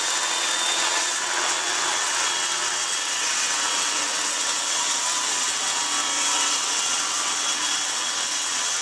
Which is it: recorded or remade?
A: remade